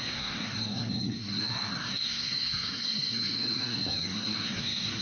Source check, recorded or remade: remade